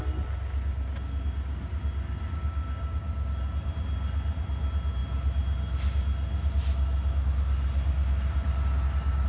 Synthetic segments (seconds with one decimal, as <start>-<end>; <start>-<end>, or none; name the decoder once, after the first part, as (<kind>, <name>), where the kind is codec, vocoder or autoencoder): none